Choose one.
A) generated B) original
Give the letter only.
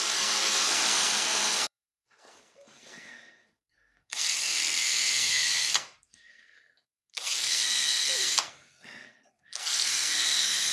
A